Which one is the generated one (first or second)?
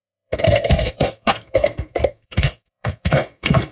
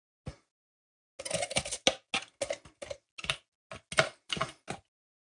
first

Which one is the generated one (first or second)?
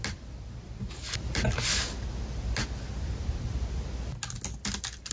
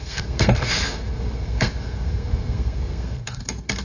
second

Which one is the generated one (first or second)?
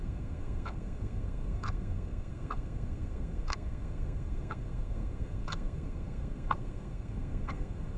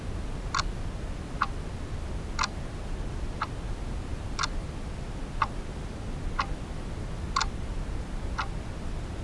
first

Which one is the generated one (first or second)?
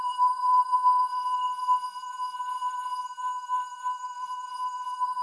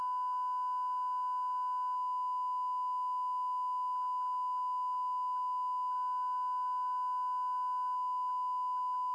first